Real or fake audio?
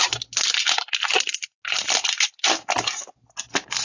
real